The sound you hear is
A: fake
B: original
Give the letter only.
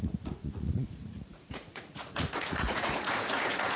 A